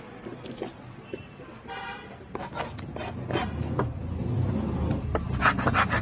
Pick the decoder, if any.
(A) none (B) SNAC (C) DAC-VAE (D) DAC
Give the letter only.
A